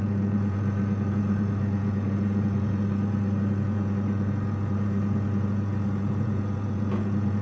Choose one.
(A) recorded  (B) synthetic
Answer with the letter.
B